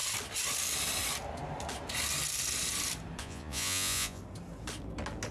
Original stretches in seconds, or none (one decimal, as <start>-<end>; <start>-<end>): 0.0-3.2; 4.2-5.3